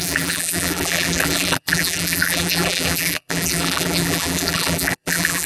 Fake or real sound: fake